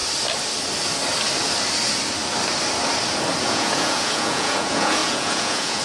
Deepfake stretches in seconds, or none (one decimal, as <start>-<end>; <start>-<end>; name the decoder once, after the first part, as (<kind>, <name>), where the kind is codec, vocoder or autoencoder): 3.5-5.8 (vocoder, Vocos)